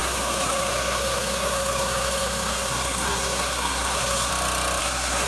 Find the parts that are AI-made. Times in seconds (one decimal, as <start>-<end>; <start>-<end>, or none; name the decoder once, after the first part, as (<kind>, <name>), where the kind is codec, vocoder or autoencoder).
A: 0.0-4.3 (codec, SNAC); 4.8-5.3